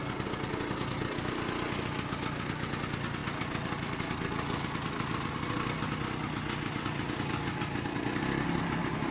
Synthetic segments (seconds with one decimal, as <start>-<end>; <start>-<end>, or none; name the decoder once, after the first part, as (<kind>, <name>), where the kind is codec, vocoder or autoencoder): none

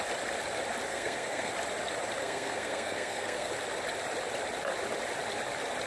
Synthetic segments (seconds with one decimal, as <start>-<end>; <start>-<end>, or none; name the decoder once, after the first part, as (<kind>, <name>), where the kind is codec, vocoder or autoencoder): 0.9-1.5 (codec, SNAC); 2.2-3.5

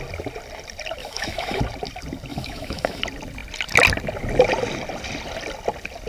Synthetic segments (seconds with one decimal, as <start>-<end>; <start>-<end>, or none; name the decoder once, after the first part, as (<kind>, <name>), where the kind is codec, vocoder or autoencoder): 1.0-1.6 (autoencoder, DAC-VAE); 2.3-3.0

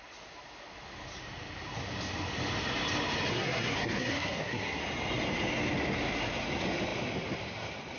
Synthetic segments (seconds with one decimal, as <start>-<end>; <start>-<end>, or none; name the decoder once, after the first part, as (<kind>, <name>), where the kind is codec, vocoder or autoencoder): 3.3-4.8 (codec, SNAC)

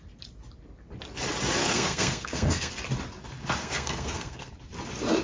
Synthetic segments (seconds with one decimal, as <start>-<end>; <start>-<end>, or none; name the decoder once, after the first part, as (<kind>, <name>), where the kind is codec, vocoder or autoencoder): 1.6-2.7 (codec, SNAC); 3.6-4.5

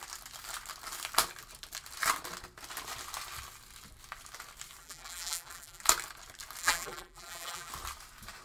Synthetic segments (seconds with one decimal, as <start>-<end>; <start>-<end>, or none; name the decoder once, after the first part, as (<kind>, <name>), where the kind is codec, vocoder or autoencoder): 4.8-5.8 (vocoder, BigVGAN v2); 6.6-7.7

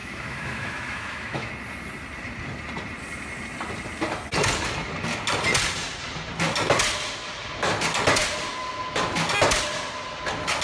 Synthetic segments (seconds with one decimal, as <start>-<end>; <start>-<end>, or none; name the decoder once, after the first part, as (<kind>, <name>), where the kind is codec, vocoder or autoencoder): 0.0-1.5 (autoencoder, DAC-VAE)

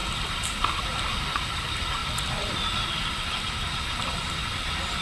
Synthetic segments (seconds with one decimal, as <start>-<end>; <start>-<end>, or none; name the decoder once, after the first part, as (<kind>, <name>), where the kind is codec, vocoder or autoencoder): 2.0-5.0 (vocoder, BigVGAN v2)